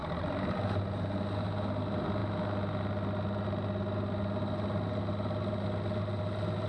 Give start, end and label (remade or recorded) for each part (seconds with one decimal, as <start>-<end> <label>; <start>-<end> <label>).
0.0-6.7 recorded